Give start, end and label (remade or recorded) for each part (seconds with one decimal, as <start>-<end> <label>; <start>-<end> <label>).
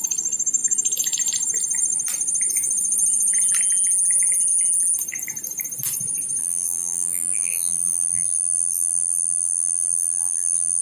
0.0-6.4 recorded; 6.4-10.8 remade